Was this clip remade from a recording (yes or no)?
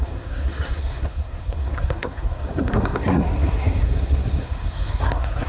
yes